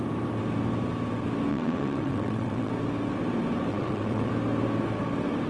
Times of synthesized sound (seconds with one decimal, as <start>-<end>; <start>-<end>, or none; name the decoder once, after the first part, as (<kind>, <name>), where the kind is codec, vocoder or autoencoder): 1.5-2.7 (vocoder, WaveNeXt); 3.7-4.3